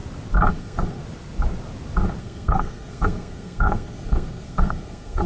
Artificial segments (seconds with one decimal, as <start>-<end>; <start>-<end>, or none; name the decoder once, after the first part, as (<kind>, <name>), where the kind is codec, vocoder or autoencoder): 0.5-1.0 (codec, SNAC); 2.2-5.3